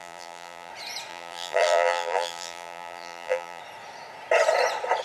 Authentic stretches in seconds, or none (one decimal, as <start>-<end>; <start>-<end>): 0.7-1.1; 3.6-5.0